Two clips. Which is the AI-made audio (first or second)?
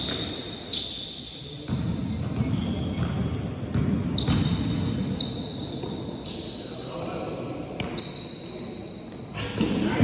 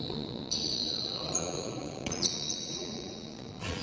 second